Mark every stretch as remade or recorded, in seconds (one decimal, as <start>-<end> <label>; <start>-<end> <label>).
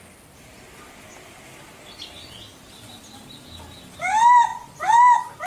0.0-5.5 recorded